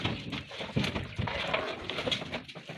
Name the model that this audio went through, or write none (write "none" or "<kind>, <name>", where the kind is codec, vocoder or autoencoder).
none